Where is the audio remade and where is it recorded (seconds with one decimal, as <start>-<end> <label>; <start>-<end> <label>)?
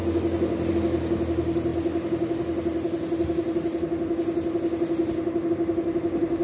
0.0-6.4 recorded